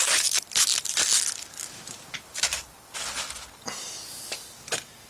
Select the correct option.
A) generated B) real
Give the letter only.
B